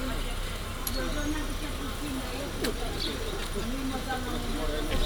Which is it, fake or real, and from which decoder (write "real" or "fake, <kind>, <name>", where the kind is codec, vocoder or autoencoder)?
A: real